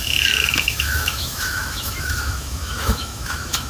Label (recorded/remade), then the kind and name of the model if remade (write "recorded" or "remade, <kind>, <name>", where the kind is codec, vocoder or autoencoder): remade, autoencoder, DAC-VAE